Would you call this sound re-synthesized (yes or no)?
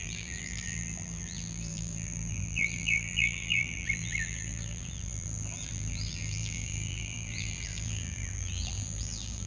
yes